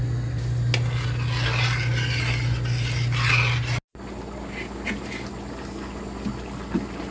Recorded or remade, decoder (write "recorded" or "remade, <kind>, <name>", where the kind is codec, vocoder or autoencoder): recorded